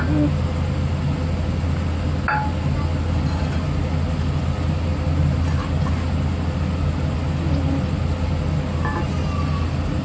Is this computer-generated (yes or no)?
no